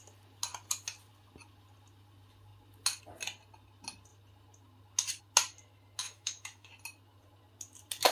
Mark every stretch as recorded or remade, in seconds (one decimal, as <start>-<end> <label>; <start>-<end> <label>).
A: 0.0-6.0 recorded; 6.0-6.7 remade; 6.7-8.1 recorded